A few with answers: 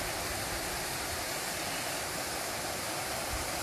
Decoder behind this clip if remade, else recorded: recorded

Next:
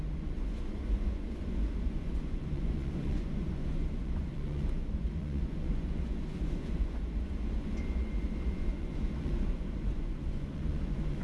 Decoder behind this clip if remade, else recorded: remade, vocoder, Vocos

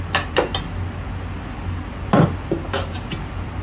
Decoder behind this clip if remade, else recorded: recorded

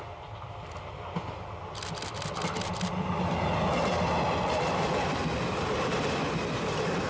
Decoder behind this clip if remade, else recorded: recorded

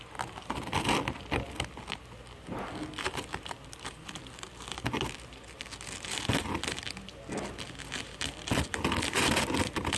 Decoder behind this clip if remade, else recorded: recorded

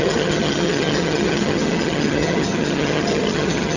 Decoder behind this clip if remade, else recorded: remade, vocoder, HiFi-GAN